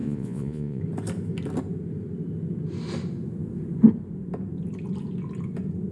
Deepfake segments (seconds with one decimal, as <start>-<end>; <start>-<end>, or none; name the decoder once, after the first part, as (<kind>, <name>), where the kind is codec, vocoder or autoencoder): 0.0-0.8 (vocoder, Vocos)